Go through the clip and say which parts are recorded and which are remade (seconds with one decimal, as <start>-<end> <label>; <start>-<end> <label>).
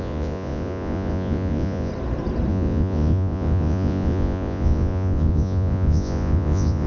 0.0-1.9 remade; 1.9-2.5 recorded; 2.5-6.9 remade